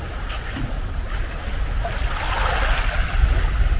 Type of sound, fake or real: real